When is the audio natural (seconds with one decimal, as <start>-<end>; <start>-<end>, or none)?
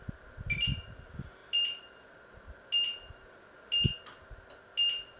0.0-5.2